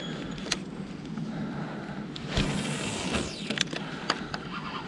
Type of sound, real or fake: real